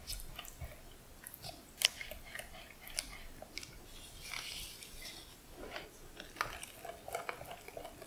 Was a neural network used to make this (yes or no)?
no